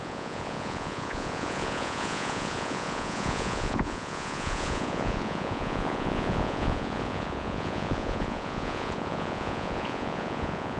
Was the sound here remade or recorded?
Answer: remade